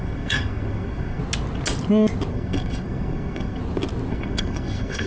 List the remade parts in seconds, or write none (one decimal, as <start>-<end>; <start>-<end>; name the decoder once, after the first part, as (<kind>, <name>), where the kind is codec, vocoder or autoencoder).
0.0-1.2 (codec, SNAC); 2.3-3.6; 4.1-5.1